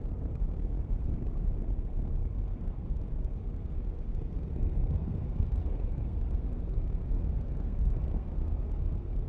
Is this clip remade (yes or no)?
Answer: yes